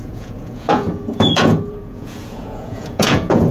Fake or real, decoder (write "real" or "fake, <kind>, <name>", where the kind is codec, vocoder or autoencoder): fake, vocoder, Vocos